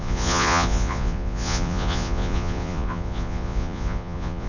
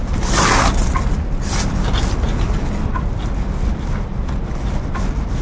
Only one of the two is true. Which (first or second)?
second